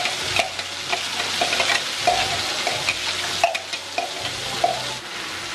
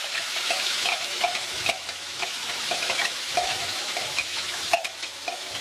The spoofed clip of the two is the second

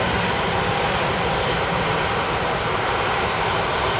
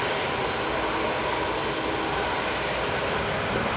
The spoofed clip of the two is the first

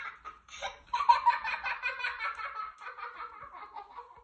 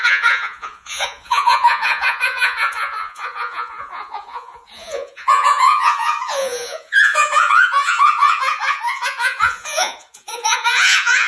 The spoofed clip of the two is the second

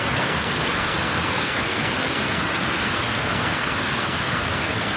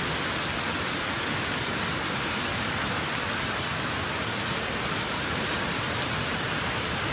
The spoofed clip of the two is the first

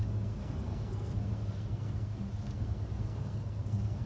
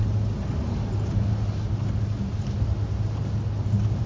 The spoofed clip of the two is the first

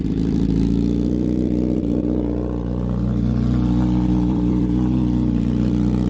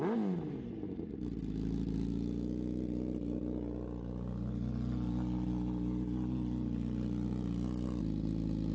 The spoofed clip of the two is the first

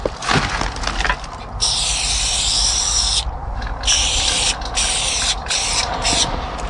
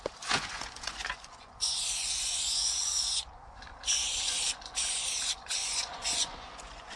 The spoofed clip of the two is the second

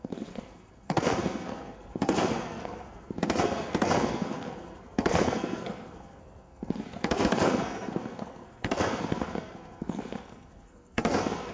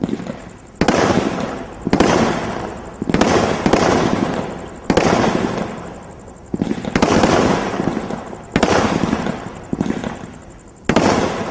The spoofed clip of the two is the first